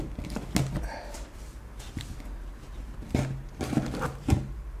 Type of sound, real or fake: real